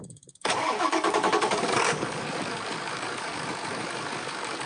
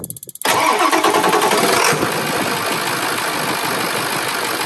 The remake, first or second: first